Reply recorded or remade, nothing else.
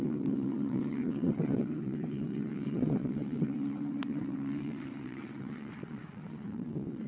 remade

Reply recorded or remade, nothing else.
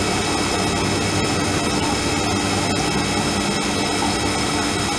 recorded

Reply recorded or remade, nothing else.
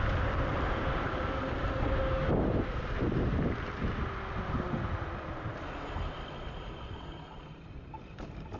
recorded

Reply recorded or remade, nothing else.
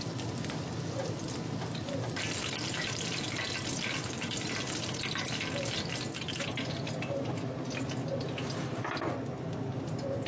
recorded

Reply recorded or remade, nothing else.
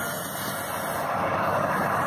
recorded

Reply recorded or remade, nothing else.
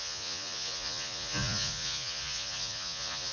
remade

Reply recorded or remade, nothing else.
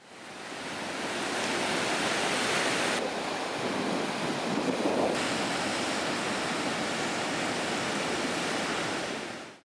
recorded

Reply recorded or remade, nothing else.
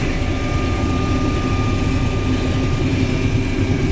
recorded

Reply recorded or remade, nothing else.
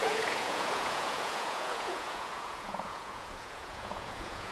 remade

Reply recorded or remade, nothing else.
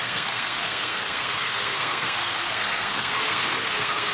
remade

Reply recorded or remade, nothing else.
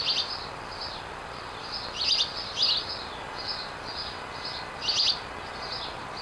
recorded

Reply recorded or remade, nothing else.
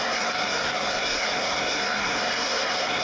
remade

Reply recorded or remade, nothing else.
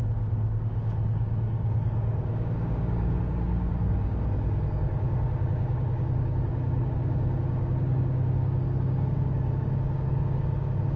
remade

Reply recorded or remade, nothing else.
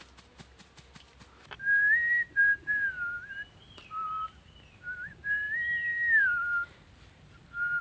recorded